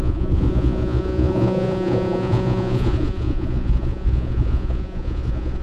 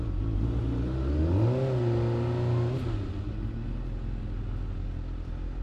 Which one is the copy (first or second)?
first